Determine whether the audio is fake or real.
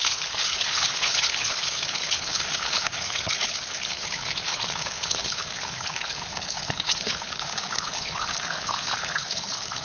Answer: fake